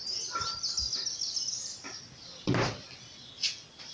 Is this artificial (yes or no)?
no